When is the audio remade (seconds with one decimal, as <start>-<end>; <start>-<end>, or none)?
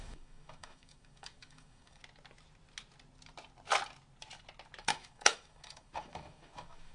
0.0-2.0; 4.8-6.9